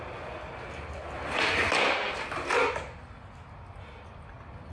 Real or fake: real